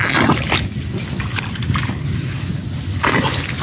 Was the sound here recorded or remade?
recorded